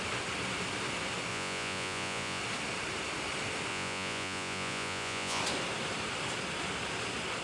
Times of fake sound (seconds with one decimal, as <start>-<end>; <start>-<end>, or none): 1.3-2.4; 3.7-5.4